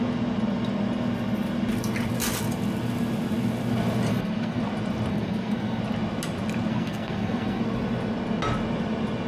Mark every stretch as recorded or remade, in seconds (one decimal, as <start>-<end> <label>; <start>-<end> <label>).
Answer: 0.0-4.1 recorded; 4.1-4.6 remade; 4.6-5.1 recorded; 5.1-5.8 remade; 5.8-6.7 recorded; 6.7-7.6 remade; 7.6-9.3 recorded